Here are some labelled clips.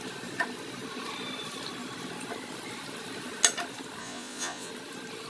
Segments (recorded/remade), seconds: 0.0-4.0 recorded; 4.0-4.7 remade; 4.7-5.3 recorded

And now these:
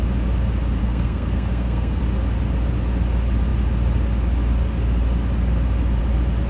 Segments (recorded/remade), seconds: 0.0-0.8 recorded; 0.8-2.0 remade; 2.0-6.5 recorded

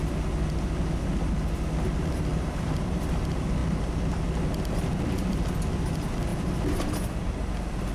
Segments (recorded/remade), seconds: 0.0-2.3 recorded; 2.3-3.2 remade; 3.2-7.9 recorded

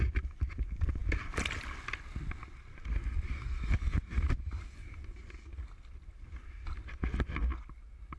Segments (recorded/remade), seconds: 0.0-8.2 recorded

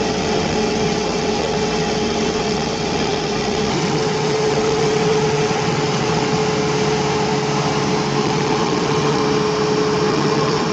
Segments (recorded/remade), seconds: 0.0-6.4 remade; 6.4-8.2 recorded; 8.2-9.2 remade; 9.2-10.1 recorded; 10.1-10.7 remade

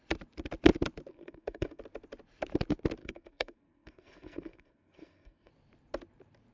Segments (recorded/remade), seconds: 0.0-1.1 recorded; 1.1-1.8 remade; 1.8-3.0 recorded; 3.0-5.5 remade; 5.5-6.5 recorded

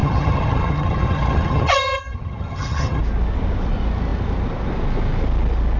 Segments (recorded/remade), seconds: 0.0-3.0 remade; 3.0-5.8 recorded